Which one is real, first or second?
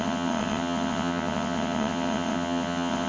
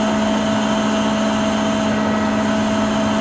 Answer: second